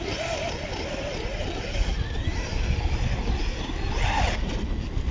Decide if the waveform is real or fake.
real